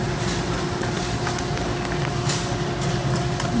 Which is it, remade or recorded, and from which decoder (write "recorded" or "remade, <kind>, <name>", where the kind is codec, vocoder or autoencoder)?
recorded